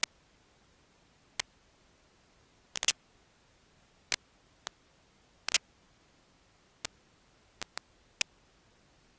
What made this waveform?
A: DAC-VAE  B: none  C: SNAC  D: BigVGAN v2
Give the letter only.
B